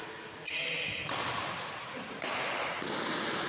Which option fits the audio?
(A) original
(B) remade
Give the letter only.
A